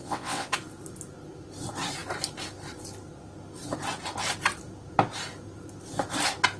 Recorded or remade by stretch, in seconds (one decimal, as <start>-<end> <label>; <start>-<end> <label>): 0.0-0.5 remade; 0.5-6.6 recorded